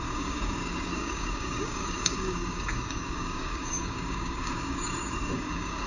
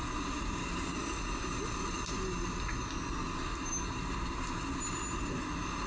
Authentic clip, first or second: second